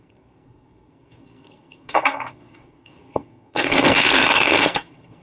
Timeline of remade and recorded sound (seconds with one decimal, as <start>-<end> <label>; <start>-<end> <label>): 0.0-5.2 remade